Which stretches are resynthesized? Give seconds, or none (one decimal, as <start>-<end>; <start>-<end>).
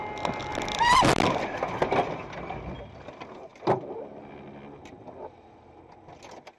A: none